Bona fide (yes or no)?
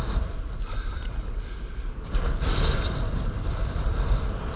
yes